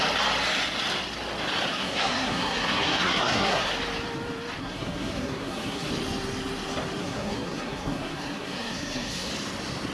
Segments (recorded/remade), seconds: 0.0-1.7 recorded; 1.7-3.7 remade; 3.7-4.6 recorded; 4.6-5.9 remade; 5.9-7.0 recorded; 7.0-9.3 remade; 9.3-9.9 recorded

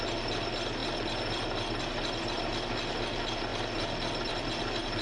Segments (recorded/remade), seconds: 0.0-5.0 recorded

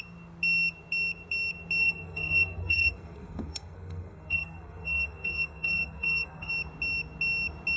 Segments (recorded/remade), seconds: 0.0-1.8 recorded; 1.8-6.5 remade; 6.5-7.8 recorded

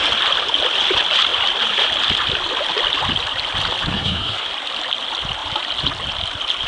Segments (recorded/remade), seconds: 0.0-3.9 recorded; 3.9-4.5 remade; 4.5-6.7 recorded

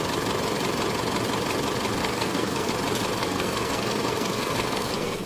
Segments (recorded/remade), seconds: 0.0-2.0 recorded; 2.0-2.7 remade; 2.7-3.2 recorded; 3.2-5.3 remade

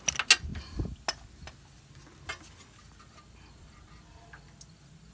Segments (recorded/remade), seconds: 0.0-5.1 recorded